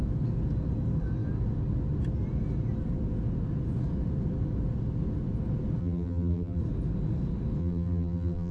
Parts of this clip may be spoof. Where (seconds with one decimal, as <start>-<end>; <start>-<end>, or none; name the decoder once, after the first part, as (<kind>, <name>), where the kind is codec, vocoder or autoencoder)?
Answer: 5.8-6.6 (vocoder, BigVGAN v2); 7.6-8.5